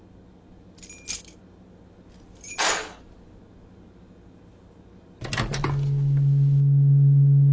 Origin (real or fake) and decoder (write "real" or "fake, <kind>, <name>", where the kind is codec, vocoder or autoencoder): real